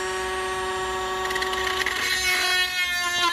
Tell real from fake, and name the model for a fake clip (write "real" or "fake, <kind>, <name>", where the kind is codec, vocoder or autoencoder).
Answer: real